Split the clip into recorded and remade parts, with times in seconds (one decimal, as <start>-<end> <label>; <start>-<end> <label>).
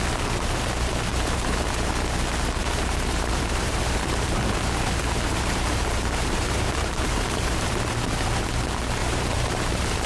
0.0-1.1 recorded; 1.1-1.9 remade; 1.9-2.6 recorded; 2.6-7.8 remade; 7.8-9.0 recorded; 9.0-10.1 remade